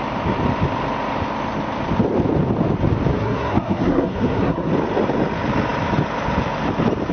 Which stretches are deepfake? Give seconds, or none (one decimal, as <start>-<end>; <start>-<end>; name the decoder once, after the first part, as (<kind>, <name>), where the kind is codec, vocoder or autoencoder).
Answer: 3.1-4.7 (codec, SNAC)